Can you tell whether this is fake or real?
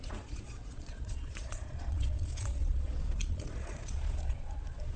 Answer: fake